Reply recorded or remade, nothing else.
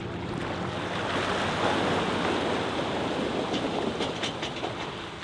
recorded